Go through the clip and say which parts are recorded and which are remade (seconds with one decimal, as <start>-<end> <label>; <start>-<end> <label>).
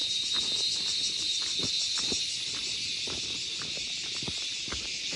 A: 0.0-5.2 recorded